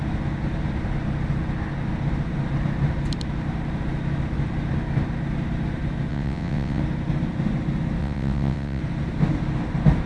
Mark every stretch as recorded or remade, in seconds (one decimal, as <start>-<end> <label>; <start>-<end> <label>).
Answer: 0.0-6.1 recorded; 6.1-6.8 remade; 6.8-8.0 recorded; 8.0-8.8 remade; 8.8-10.1 recorded